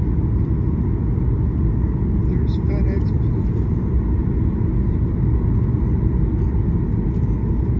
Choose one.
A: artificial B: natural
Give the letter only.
B